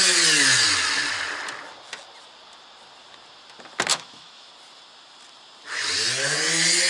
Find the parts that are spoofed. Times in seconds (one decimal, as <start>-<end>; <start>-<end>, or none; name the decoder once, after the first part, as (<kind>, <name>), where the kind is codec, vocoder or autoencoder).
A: 3.9-4.5 (autoencoder, DAC-VAE)